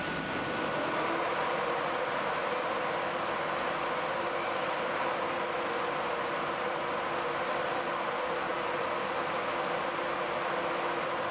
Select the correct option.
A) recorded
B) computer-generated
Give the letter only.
A